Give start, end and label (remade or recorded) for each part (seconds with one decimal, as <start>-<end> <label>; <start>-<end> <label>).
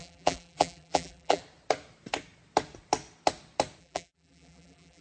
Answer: 0.0-1.4 remade; 1.4-3.8 recorded; 3.8-5.0 remade